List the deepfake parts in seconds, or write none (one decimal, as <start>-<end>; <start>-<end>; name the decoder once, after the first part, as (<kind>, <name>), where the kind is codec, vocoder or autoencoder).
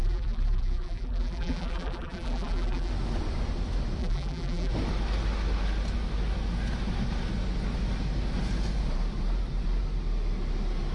0.0-2.9 (vocoder, BigVGAN v2); 4.0-4.7